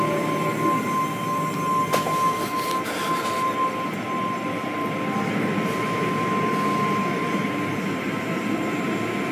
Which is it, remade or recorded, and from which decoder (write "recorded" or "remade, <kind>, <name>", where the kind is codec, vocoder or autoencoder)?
recorded